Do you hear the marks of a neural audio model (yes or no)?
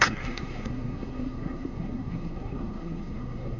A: yes